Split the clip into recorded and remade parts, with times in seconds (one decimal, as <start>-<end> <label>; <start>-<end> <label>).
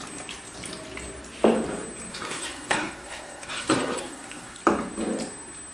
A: 0.0-2.1 recorded; 2.1-4.6 remade; 4.6-5.7 recorded